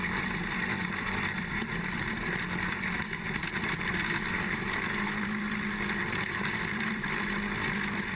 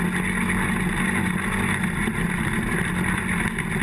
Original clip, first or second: second